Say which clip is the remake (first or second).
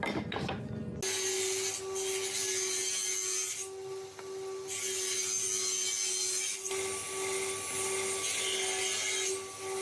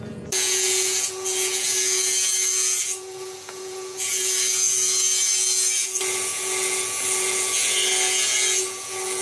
second